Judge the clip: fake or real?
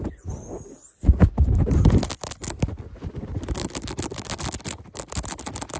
real